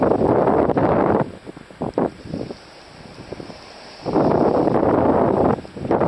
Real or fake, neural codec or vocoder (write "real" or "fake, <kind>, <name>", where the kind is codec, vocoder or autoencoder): fake, vocoder, BigVGAN v2